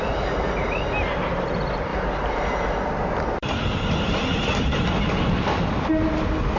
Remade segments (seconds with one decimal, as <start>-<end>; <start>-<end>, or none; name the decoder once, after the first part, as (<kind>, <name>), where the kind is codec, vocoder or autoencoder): none